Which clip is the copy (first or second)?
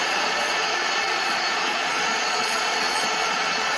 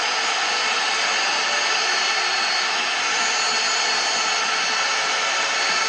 first